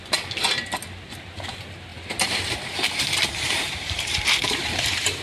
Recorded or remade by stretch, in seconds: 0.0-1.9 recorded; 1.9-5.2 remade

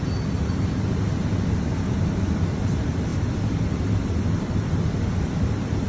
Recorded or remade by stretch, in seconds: 0.0-2.0 recorded; 2.0-5.9 remade

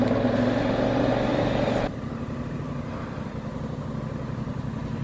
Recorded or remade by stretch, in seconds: 0.0-1.3 recorded; 1.3-3.8 remade; 3.8-5.0 recorded